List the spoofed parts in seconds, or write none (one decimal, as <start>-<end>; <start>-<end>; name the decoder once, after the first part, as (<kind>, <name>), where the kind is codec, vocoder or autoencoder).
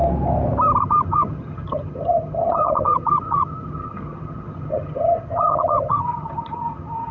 0.8-7.1 (vocoder, HiFi-GAN)